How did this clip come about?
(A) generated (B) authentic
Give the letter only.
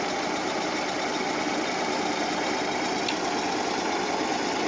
B